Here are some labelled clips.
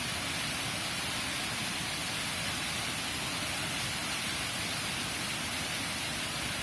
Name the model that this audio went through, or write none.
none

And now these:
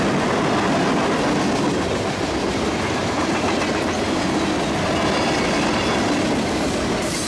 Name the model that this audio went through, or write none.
none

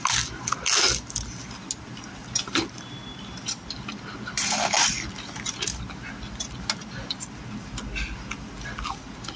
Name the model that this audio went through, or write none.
none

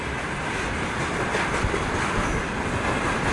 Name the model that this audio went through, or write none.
none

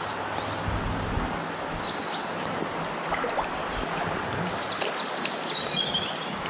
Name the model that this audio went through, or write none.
none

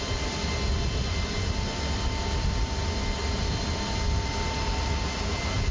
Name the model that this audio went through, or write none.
none